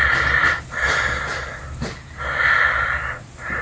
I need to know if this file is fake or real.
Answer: real